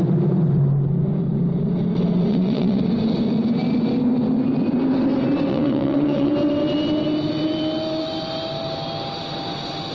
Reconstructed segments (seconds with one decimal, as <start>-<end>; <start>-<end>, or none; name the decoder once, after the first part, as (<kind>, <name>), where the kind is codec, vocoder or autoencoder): 2.3-2.8 (vocoder, WaveNeXt); 5.5-6.3